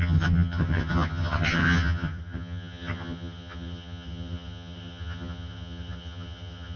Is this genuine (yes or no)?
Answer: no